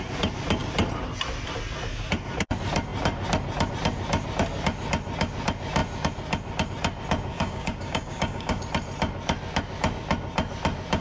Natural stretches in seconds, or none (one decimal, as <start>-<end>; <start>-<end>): 0.0-7.3; 8.6-11.0